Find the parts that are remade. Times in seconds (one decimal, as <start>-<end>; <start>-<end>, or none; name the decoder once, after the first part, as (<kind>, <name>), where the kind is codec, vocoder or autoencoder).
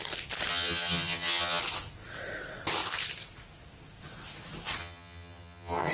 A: 0.5-1.6 (vocoder, HiFi-GAN); 4.8-5.9